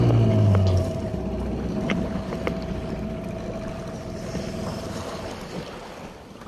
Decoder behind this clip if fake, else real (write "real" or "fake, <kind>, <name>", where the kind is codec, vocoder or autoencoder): real